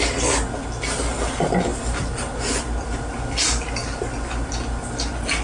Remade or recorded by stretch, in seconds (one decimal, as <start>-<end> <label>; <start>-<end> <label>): 0.0-5.4 recorded